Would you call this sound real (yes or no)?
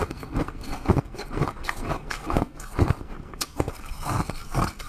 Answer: no